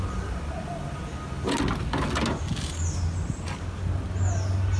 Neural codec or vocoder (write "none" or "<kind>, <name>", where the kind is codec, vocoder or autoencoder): none